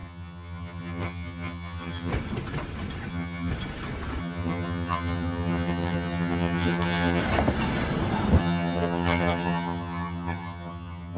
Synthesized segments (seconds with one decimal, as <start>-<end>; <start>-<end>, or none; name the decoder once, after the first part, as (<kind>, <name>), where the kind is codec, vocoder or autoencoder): 0.0-2.1 (vocoder, HiFi-GAN); 3.1-3.5; 4.2-7.2; 8.4-11.2